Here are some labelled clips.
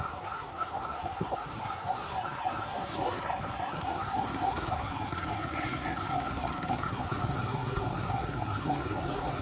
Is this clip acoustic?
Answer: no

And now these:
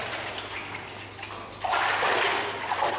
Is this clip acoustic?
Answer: yes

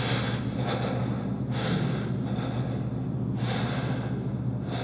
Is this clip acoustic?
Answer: yes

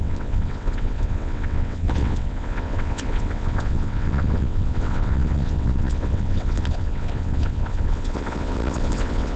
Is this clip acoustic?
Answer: no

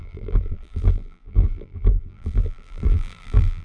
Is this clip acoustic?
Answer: no